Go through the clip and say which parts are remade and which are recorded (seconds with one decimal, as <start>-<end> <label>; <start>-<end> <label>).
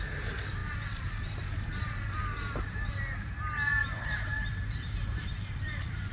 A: 0.0-0.6 recorded; 0.6-2.6 remade; 2.6-3.7 recorded; 3.7-6.1 remade